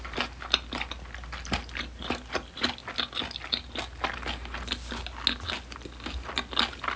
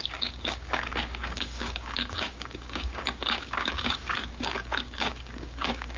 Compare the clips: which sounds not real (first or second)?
second